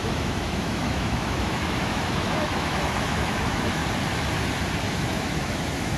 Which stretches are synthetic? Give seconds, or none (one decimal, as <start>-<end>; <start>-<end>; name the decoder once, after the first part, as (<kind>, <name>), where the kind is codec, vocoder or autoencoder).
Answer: 0.0-3.8 (autoencoder, DAC-VAE); 4.9-6.0